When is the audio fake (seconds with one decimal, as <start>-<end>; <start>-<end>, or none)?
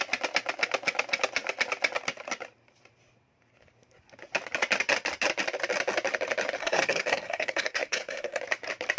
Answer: 6.6-8.4